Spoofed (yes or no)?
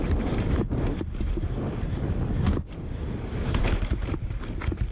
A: no